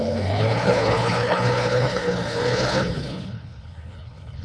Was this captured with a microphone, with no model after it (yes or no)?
no